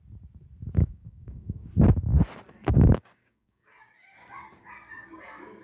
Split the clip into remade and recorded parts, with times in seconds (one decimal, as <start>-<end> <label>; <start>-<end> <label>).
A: 0.0-0.8 recorded; 0.8-1.7 remade; 1.7-2.7 recorded; 2.7-4.7 remade; 4.7-5.6 recorded